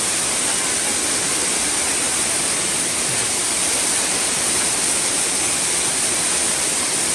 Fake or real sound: real